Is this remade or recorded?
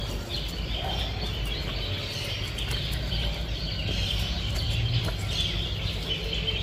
recorded